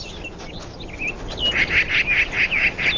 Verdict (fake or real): real